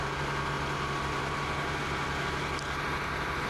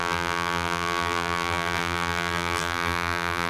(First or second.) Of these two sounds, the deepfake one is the second